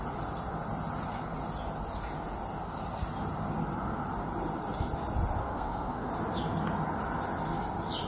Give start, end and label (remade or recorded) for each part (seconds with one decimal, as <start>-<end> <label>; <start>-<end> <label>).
0.0-5.4 recorded; 5.4-6.1 remade; 6.1-8.1 recorded